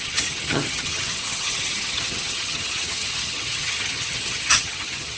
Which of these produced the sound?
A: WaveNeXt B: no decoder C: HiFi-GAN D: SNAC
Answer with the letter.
C